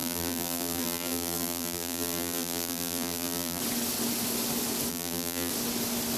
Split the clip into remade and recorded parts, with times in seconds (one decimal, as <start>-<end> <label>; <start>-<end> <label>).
0.0-3.6 remade; 3.6-4.9 recorded; 4.9-5.5 remade; 5.5-6.2 recorded